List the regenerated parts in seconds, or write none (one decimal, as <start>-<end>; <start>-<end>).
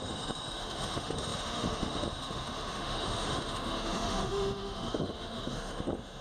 0.0-6.2